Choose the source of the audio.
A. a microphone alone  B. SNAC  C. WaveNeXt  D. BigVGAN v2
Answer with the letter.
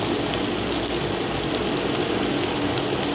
A